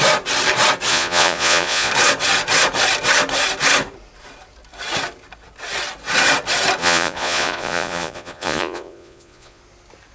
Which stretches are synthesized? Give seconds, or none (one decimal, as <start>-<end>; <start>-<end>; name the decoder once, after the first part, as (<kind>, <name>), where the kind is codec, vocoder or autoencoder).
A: 0.9-1.9 (vocoder, Vocos); 6.8-9.6